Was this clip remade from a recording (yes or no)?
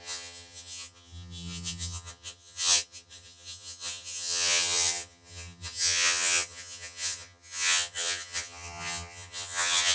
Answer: yes